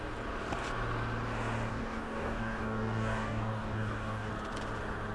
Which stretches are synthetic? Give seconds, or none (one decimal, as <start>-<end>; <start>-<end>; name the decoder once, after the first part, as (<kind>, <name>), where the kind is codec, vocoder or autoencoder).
1.7-4.3 (codec, DAC)

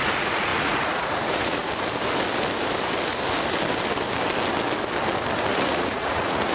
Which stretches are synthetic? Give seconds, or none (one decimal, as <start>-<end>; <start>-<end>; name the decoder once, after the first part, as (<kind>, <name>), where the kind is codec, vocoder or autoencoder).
0.0-1.6 (vocoder, Vocos); 5.5-6.5

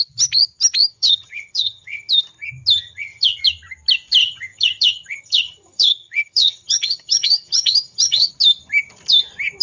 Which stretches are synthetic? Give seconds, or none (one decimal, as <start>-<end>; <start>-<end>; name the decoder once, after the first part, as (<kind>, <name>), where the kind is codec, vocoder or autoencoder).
0.9-2.1 (vocoder, HiFi-GAN); 2.8-3.4; 4.2-8.3